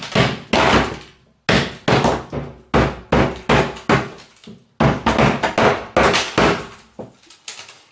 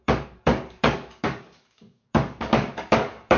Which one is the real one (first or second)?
first